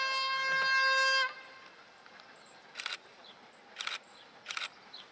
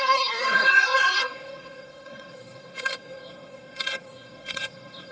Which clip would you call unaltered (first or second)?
first